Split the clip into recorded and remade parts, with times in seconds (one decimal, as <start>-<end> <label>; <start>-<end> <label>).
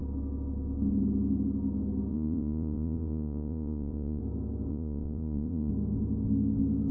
0.0-2.1 recorded; 2.1-4.2 remade; 4.2-4.7 recorded; 4.7-5.7 remade; 5.7-6.9 recorded